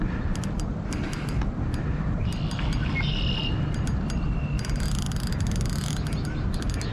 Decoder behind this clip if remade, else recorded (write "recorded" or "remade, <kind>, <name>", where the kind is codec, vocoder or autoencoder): recorded